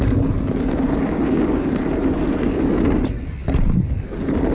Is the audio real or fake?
real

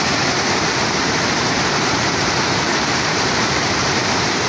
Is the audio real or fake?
fake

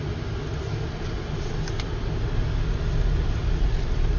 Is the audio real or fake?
real